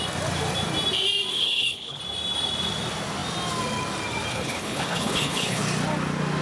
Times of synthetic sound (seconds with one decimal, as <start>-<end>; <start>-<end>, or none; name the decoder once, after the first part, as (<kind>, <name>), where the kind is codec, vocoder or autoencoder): 1.3-2.0 (codec, HILCodec); 4.3-5.6